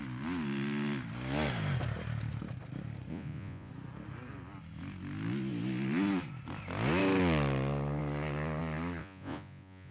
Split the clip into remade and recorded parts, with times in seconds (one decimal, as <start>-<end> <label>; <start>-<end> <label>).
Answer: 0.0-3.1 recorded; 3.1-3.7 remade; 3.7-9.0 recorded; 9.0-9.9 remade